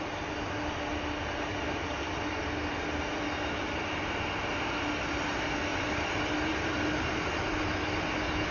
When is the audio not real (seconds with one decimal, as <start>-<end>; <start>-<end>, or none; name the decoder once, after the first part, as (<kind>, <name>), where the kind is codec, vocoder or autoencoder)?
5.7-7.2 (vocoder, BigVGAN v2)